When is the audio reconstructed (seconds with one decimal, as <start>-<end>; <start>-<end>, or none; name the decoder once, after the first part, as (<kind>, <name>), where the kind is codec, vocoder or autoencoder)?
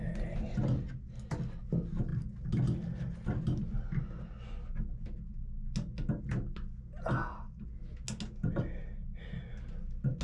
none